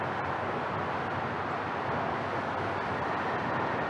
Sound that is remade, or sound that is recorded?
recorded